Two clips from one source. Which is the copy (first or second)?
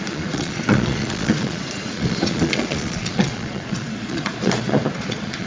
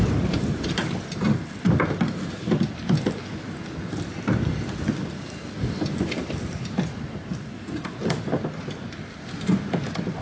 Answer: first